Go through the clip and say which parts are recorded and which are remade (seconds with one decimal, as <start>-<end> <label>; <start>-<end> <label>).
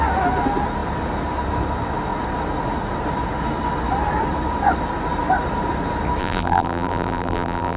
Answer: 0.0-6.2 recorded; 6.2-7.8 remade